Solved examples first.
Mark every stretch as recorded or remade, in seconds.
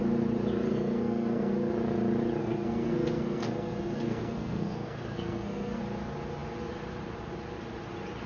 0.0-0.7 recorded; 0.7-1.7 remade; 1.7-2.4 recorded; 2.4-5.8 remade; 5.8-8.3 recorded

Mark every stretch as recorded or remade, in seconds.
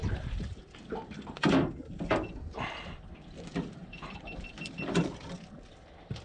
0.0-3.8 recorded; 3.8-5.5 remade; 5.5-6.2 recorded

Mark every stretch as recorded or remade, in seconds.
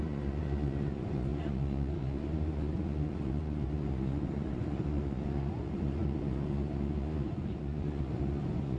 0.0-8.8 remade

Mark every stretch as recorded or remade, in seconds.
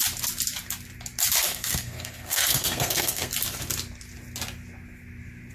0.0-1.5 recorded; 1.5-3.3 remade; 3.3-5.5 recorded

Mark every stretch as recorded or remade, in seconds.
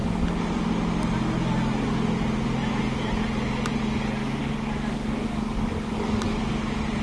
0.0-4.2 recorded; 4.2-6.4 remade; 6.4-7.0 recorded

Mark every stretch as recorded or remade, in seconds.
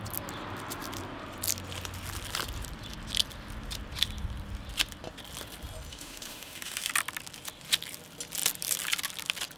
0.0-5.9 recorded; 5.9-6.9 remade; 6.9-9.6 recorded